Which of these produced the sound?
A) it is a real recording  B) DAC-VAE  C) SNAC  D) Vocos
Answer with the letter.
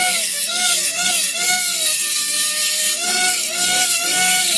C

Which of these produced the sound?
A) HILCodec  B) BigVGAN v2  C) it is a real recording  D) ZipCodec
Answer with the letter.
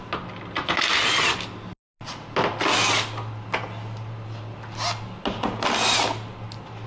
C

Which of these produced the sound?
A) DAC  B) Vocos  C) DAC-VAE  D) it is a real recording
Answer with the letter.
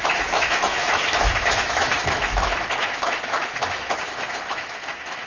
C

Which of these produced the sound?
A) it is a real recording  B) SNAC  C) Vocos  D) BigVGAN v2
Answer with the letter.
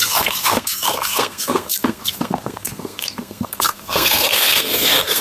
B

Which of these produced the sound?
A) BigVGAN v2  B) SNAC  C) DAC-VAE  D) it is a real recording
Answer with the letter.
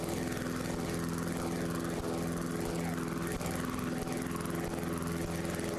D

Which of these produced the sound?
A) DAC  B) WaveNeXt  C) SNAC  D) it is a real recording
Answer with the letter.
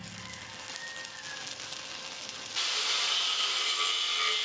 D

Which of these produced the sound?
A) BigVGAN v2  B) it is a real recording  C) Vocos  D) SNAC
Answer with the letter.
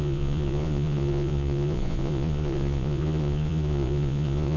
C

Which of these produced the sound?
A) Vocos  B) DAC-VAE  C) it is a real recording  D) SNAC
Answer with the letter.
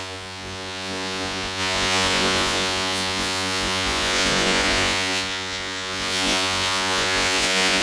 A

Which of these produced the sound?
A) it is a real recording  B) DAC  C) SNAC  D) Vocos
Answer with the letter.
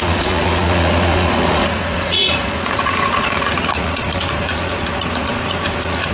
D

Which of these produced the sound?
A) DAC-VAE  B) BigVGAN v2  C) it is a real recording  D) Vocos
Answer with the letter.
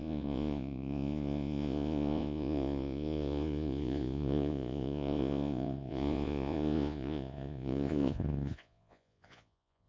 D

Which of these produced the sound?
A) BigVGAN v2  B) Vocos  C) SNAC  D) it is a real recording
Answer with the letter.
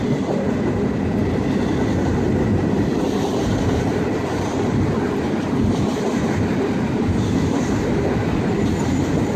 A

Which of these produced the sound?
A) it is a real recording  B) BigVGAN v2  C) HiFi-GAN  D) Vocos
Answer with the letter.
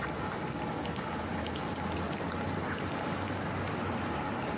A